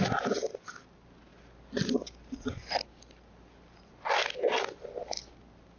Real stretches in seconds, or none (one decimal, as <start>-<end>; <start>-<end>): 0.0-5.8